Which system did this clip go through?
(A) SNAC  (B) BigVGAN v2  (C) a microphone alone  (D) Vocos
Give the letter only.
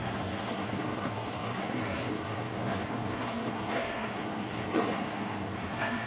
A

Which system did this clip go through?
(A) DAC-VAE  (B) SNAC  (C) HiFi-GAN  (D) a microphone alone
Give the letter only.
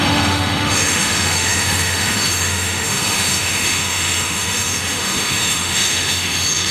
A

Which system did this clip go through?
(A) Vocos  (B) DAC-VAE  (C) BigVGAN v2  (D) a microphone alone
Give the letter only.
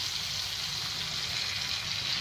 D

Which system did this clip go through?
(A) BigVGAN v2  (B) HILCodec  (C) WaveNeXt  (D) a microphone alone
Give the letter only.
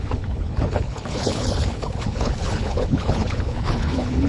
B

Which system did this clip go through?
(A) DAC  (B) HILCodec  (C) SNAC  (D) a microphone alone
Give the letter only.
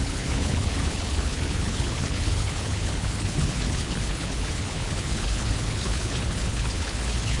B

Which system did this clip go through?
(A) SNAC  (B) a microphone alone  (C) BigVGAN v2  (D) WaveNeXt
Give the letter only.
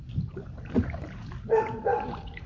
C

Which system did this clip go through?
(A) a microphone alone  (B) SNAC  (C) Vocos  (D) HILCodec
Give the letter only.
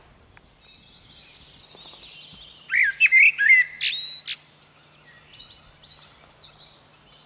A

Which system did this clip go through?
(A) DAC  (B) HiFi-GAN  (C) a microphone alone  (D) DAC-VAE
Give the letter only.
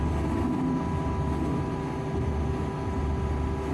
C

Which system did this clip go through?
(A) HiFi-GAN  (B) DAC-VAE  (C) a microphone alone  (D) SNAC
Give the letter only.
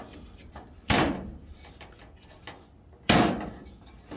C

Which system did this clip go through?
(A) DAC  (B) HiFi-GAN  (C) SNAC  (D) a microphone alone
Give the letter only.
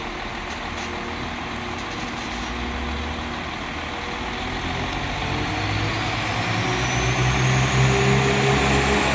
D